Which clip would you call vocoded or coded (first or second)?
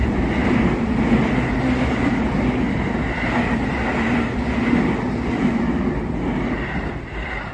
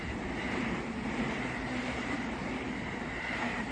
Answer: second